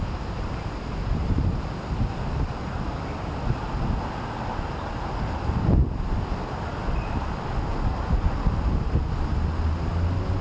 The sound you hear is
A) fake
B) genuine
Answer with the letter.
B